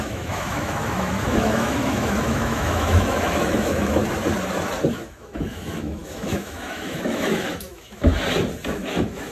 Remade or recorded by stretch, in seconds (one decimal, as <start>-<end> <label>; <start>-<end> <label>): 0.0-4.0 remade; 4.0-4.9 recorded; 4.9-8.1 remade; 8.1-8.7 recorded; 8.7-9.3 remade